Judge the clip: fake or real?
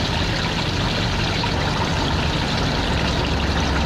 real